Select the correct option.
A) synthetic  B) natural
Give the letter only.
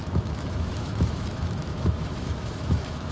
A